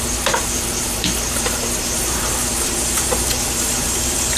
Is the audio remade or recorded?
remade